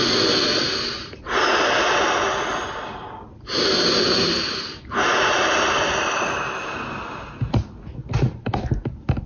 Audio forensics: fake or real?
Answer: real